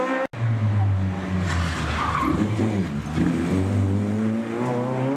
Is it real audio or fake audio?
real